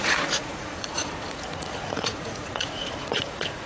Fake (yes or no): yes